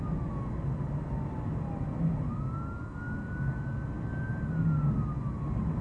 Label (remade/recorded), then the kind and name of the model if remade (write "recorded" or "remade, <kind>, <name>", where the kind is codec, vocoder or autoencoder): recorded